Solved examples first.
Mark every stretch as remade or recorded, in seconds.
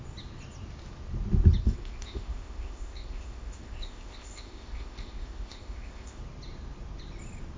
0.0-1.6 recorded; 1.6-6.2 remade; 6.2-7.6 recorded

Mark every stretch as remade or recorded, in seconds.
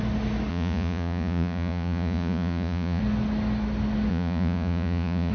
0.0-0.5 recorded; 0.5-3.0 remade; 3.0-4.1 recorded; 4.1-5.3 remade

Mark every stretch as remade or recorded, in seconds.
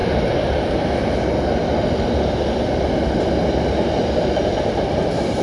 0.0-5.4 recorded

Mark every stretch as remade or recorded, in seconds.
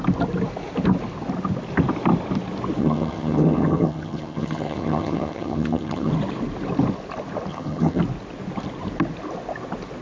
0.0-2.8 recorded; 2.8-6.1 remade; 6.1-7.5 recorded; 7.5-8.0 remade; 8.0-10.0 recorded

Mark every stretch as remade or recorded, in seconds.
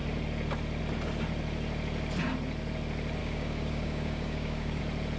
0.0-3.2 recorded; 3.2-4.8 remade; 4.8-5.2 recorded